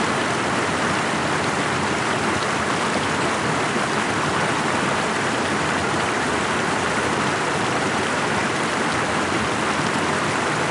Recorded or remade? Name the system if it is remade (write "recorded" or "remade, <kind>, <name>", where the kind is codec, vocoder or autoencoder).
recorded